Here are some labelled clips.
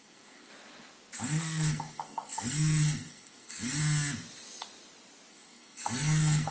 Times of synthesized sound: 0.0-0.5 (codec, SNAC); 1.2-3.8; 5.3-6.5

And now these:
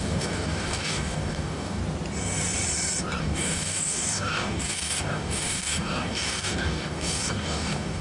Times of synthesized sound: 0.0-1.8 (codec, DAC); 3.2-8.0

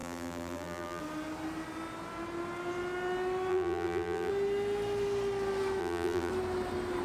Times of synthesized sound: 0.0-1.0 (vocoder, BigVGAN v2); 3.5-4.3; 5.8-6.3

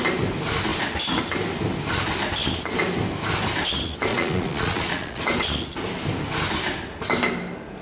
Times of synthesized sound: 4.1-5.2 (vocoder, Vocos)

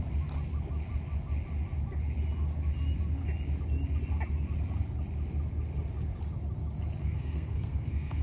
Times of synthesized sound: 7.0-8.2 (codec, SNAC)

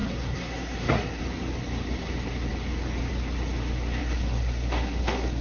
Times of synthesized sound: 0.0-1.2 (codec, SNAC); 4.0-5.4